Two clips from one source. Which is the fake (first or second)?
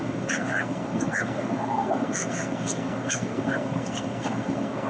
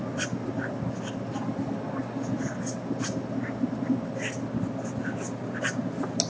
first